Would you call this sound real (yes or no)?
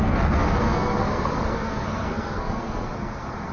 no